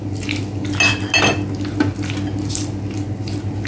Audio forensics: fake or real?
real